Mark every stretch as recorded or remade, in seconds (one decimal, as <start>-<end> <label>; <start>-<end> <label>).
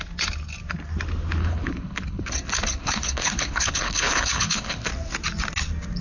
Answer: 0.0-1.4 recorded; 1.4-2.3 remade; 2.3-2.8 recorded; 2.8-4.9 remade; 4.9-6.0 recorded